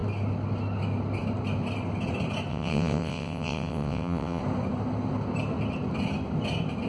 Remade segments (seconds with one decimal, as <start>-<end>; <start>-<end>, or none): 2.5-4.4